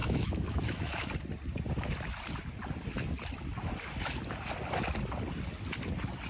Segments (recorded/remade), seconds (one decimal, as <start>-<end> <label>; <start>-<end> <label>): 0.0-1.1 remade; 1.1-6.3 recorded